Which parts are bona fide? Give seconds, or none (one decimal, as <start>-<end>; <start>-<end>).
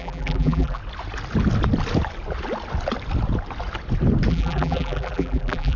0.8-4.3